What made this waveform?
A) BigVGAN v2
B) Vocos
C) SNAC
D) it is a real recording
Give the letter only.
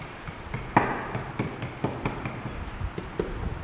D